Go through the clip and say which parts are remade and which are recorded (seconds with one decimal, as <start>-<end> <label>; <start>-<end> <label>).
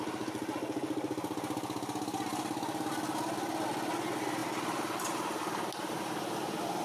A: 0.0-2.3 recorded; 2.3-2.9 remade; 2.9-6.8 recorded